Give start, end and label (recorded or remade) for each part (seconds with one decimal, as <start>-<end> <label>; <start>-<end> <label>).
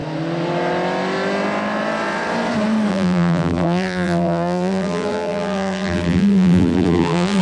0.0-2.9 recorded; 2.9-7.4 remade